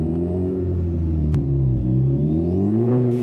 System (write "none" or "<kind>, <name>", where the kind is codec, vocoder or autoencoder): vocoder, Vocos